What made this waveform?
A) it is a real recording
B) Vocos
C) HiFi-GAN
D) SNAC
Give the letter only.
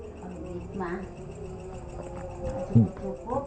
A